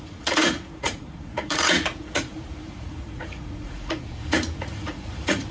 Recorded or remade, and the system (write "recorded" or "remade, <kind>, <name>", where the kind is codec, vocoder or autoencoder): remade, vocoder, Vocos